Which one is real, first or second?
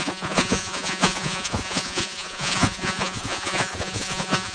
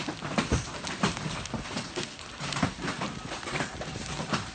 second